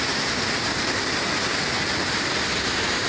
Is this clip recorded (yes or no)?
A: yes